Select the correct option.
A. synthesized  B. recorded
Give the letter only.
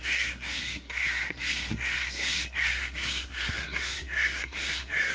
A